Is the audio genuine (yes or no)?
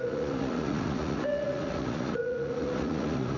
no